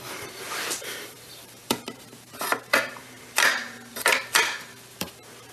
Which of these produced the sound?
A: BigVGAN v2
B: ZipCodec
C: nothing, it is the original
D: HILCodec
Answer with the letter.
A